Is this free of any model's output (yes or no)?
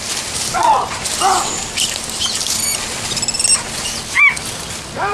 yes